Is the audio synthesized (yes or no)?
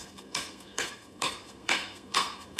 yes